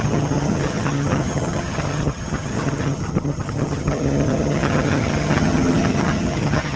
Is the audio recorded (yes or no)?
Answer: no